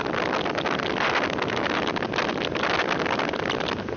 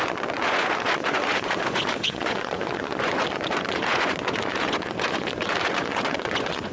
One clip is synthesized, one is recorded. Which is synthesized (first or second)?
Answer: second